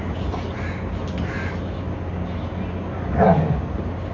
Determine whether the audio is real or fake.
real